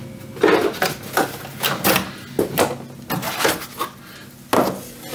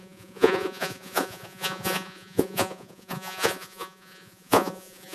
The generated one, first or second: second